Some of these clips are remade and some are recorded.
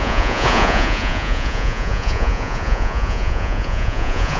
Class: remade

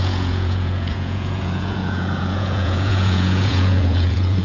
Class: remade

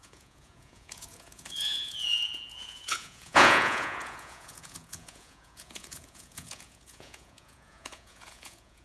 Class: remade